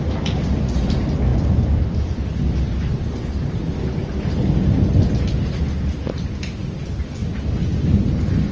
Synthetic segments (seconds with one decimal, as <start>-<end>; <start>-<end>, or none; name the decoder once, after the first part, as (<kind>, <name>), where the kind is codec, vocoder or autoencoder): none